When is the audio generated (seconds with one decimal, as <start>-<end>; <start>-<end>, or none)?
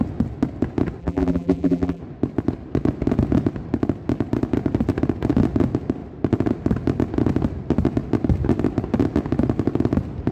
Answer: 1.0-2.0